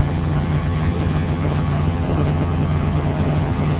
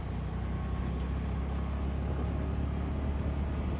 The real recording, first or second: second